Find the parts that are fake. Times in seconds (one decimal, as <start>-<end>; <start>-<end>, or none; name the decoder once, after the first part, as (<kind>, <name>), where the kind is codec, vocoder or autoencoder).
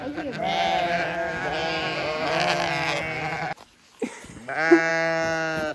none